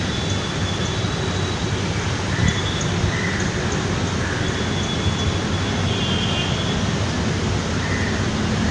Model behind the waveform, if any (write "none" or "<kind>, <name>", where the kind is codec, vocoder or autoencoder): none